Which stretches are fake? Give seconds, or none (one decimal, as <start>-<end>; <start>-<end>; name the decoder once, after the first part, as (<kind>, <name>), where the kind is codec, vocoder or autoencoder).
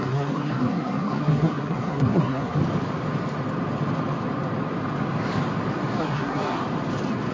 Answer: 0.0-2.6 (codec, SNAC); 6.0-6.6